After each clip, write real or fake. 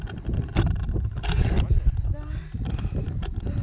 real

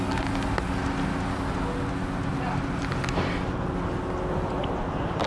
real